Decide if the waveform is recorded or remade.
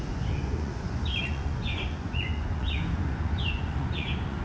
remade